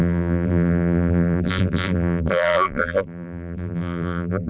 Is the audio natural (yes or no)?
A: no